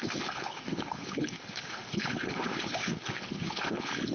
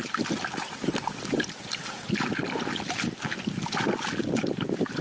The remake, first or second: first